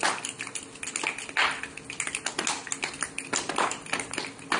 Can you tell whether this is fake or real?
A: real